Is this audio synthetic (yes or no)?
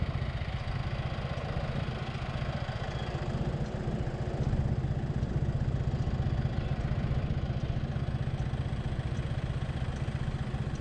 no